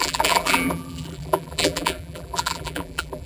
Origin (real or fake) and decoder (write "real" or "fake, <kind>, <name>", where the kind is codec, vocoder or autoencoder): fake, vocoder, BigVGAN v2